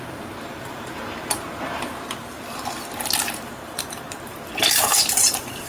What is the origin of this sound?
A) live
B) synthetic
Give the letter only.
B